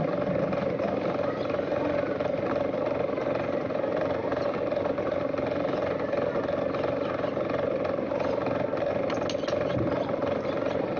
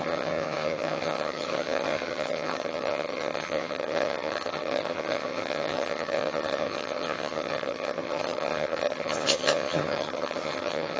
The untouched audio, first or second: first